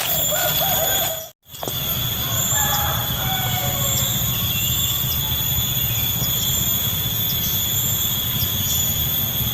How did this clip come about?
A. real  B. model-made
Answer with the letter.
A